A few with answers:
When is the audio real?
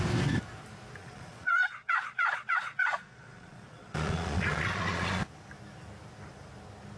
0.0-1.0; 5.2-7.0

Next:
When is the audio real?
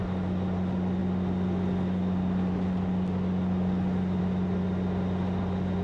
0.0-5.8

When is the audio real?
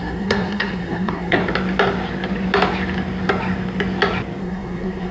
1.4-4.4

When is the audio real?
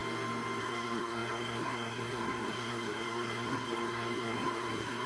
0.0-0.6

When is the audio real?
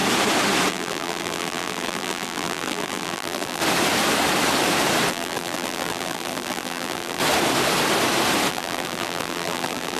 0.0-0.7; 3.6-5.1; 7.2-8.5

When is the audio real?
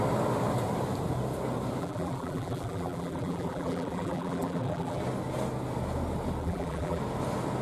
0.0-1.8; 5.0-6.4; 7.0-7.6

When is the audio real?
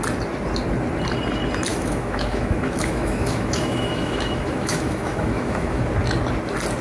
0.0-1.7; 5.8-6.8